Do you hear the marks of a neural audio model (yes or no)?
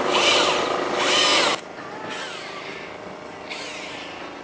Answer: no